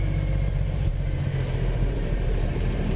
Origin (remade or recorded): remade